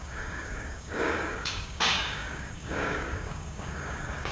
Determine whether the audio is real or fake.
fake